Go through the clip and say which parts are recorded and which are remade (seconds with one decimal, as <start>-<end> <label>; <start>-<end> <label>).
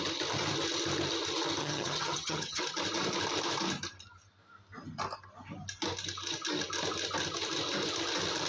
0.0-1.6 recorded; 1.6-2.6 remade; 2.6-8.5 recorded